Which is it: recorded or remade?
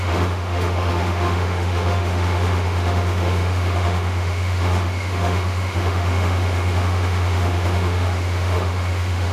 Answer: remade